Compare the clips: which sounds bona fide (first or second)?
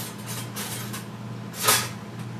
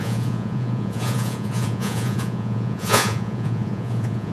first